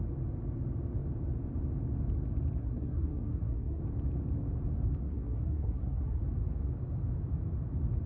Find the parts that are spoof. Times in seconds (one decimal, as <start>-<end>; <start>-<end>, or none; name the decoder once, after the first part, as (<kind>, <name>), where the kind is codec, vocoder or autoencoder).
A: 2.6-3.8 (codec, SNAC); 5.0-6.2